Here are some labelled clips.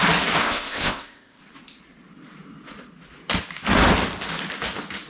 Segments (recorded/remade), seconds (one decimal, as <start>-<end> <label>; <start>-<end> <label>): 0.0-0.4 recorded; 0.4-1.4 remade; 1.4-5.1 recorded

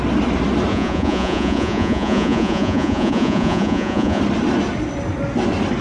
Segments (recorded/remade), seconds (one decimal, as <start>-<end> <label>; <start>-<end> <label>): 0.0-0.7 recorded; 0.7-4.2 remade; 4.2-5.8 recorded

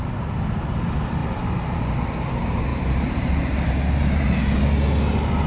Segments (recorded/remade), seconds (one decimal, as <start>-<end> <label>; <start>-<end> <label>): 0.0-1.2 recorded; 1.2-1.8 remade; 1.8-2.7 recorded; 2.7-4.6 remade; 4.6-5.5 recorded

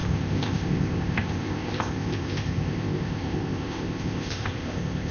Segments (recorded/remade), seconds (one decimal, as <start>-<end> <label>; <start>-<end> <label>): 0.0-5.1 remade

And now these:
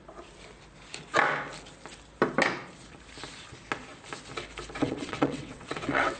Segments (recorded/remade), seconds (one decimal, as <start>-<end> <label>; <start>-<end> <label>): 0.0-4.8 recorded; 4.8-6.2 remade

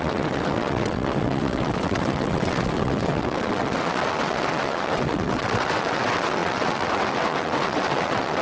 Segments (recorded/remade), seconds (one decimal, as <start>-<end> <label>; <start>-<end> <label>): 0.0-8.4 remade

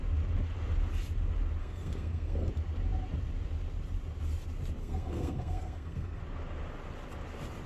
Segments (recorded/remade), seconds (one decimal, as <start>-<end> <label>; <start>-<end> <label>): 0.0-1.6 recorded; 1.6-2.5 remade; 2.5-4.8 recorded; 4.8-6.2 remade; 6.2-7.7 recorded